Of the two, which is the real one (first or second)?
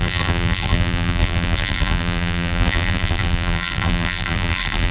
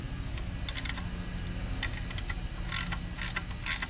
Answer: second